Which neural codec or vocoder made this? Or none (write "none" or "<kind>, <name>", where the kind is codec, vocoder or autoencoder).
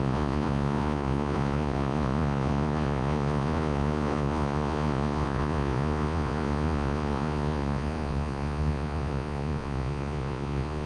vocoder, Vocos